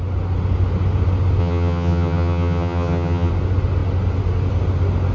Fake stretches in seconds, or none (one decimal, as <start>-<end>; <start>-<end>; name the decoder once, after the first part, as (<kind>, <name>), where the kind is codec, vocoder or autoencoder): 1.4-3.3 (vocoder, HiFi-GAN)